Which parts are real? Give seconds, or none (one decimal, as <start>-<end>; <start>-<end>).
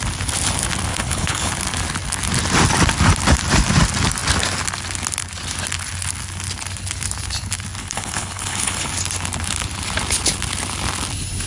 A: 0.0-0.9; 1.5-7.8; 8.9-11.5